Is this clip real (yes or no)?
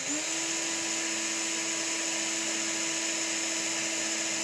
yes